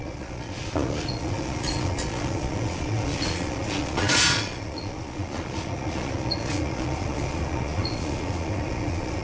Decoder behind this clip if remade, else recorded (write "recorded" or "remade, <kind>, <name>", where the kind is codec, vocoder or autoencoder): remade, vocoder, Vocos